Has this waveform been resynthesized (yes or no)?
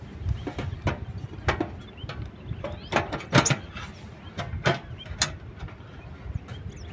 no